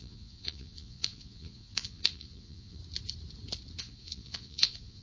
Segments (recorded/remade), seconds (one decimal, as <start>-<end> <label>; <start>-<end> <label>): 0.0-2.8 remade; 2.8-3.8 recorded; 3.8-5.0 remade